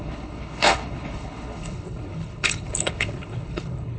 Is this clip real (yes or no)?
no